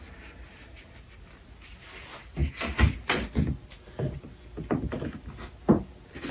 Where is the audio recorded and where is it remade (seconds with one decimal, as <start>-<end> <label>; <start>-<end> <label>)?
0.0-6.3 recorded